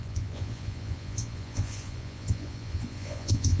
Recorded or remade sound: remade